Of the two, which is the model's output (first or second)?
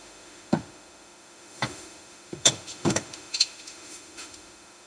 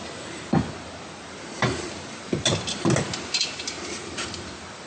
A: first